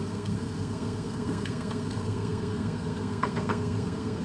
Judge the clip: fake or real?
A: fake